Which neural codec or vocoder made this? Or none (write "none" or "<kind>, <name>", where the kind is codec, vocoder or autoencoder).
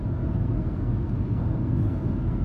codec, SNAC